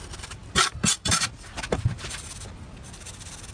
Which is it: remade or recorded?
recorded